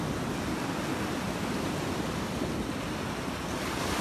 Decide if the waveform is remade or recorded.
recorded